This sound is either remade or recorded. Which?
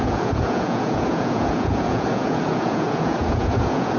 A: remade